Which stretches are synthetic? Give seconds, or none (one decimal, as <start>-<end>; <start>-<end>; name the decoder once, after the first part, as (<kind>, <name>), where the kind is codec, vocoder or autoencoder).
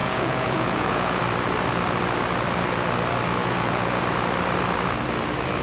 0.0-1.2 (vocoder, Vocos); 3.4-4.0